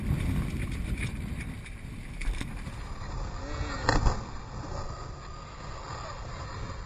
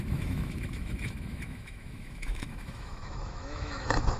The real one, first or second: first